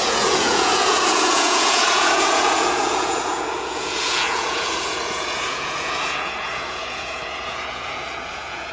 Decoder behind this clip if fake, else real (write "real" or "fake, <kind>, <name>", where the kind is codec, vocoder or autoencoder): fake, vocoder, Vocos